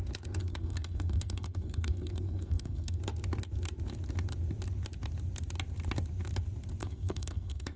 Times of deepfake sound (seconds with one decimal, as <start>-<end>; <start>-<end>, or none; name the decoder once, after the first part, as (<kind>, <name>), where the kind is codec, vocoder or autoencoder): 0.4-3.0 (codec, SNAC); 6.8-7.8